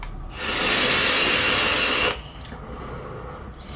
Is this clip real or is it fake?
real